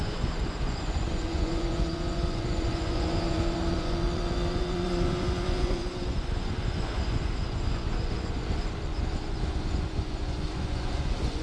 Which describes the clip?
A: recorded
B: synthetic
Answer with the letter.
B